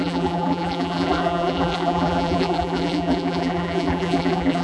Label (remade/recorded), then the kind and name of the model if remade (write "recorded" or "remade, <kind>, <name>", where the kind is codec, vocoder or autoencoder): remade, vocoder, BigVGAN v2